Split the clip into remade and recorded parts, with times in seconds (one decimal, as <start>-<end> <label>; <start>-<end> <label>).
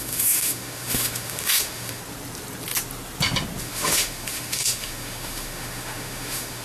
0.0-2.0 remade; 2.0-3.6 recorded; 3.6-6.6 remade